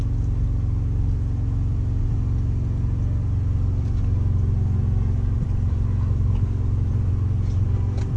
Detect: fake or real real